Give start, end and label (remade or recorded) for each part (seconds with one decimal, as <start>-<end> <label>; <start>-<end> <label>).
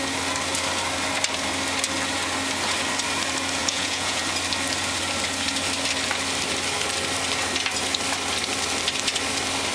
0.0-3.6 recorded; 3.6-4.2 remade; 4.2-9.7 recorded